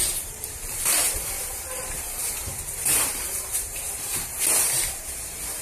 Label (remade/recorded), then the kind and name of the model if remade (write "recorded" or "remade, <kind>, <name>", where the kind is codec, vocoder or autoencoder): remade, vocoder, BigVGAN v2